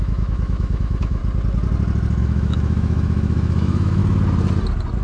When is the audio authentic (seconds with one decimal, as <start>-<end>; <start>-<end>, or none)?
1.2-2.2; 4.0-5.0